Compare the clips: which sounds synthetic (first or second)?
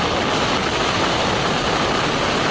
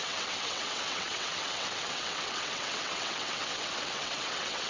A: second